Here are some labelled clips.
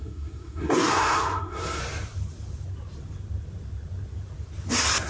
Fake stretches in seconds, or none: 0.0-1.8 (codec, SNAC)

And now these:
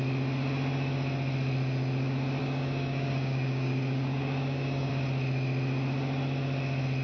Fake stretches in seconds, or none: 2.4-4.9 (codec, DAC)

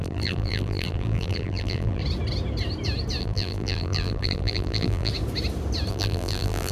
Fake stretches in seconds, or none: 0.0-2.0 (vocoder, BigVGAN v2); 3.2-5.1; 5.9-6.7

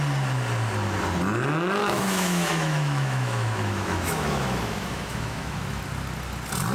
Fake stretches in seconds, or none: 1.8-5.8 (autoencoder, DAC-VAE)

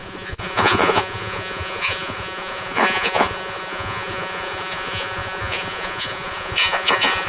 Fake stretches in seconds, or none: 0.0-7.3 (vocoder, Vocos)

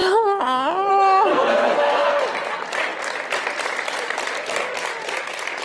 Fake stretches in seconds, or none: 1.3-2.2 (codec, SNAC)